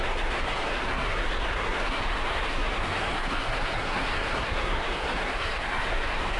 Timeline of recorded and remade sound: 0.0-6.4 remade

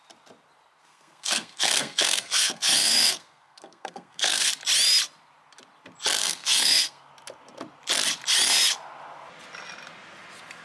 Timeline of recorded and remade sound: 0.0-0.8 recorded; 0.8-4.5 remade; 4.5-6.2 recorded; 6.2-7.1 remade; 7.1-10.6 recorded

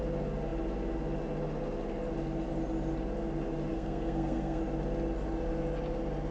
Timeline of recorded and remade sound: 0.0-3.7 recorded; 3.7-4.6 remade; 4.6-6.3 recorded